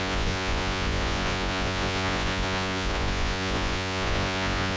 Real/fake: fake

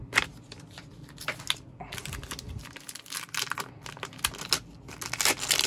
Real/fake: real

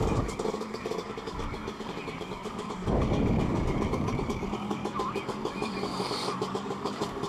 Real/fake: fake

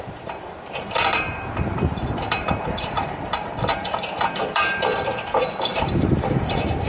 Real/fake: fake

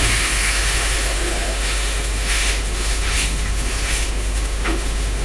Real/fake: fake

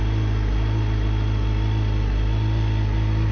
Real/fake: real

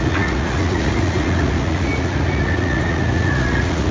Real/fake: fake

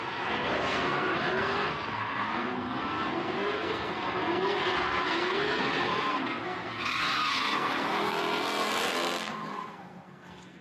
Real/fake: fake